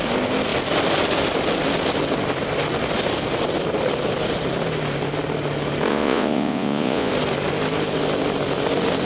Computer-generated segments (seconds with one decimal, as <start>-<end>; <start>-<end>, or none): 5.9-7.1